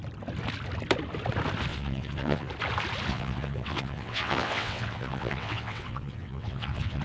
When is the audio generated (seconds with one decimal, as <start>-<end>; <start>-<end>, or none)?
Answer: 1.7-2.5; 3.1-7.0